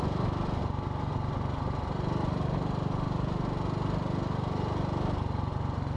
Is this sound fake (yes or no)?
no